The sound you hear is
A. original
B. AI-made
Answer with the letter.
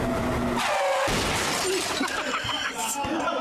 A